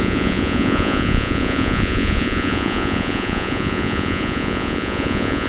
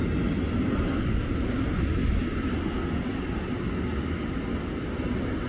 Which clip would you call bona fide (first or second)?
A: second